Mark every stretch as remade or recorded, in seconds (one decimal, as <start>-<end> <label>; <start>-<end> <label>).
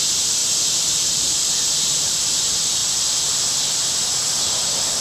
0.0-0.4 remade; 0.4-0.9 recorded; 0.9-2.8 remade; 2.8-3.7 recorded; 3.7-5.0 remade